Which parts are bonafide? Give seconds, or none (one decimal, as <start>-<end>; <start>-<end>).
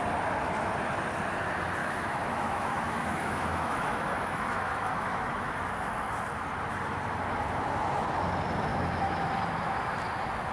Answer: 0.0-1.8; 5.7-8.7; 9.3-10.5